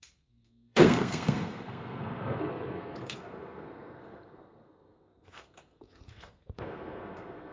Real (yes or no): no